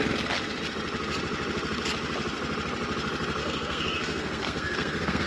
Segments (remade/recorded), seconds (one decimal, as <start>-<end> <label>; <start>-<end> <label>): 0.0-3.4 recorded; 3.4-5.3 remade